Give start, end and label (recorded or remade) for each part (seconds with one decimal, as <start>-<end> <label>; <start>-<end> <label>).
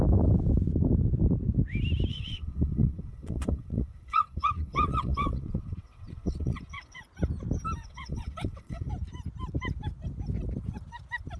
0.0-2.1 recorded; 2.1-7.0 remade; 7.0-7.8 recorded; 7.8-8.9 remade; 8.9-11.4 recorded